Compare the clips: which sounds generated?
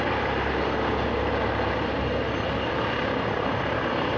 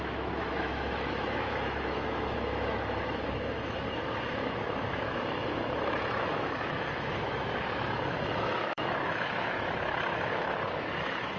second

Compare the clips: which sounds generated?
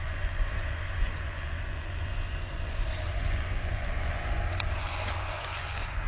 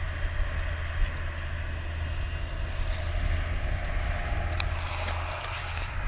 first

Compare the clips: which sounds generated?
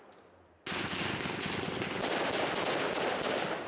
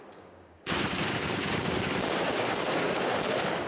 second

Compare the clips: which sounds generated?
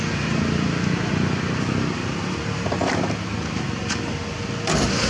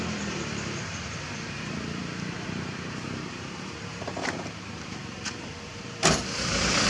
second